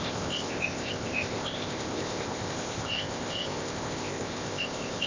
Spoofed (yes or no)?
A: yes